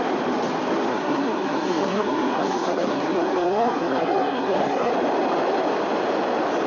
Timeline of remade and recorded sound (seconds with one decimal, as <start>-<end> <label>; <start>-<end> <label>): 0.0-0.9 recorded; 0.9-4.9 remade; 4.9-6.7 recorded